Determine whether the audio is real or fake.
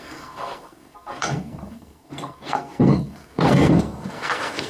fake